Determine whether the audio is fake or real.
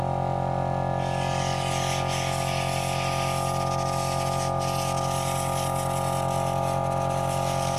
real